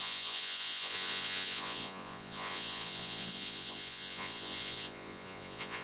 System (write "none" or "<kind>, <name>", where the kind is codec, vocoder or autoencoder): vocoder, Vocos